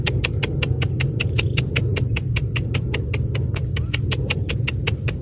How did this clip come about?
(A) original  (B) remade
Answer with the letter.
B